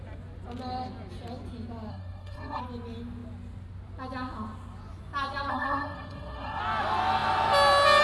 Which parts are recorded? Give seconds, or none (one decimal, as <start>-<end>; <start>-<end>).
0.0-1.9; 2.6-5.5; 6.6-8.0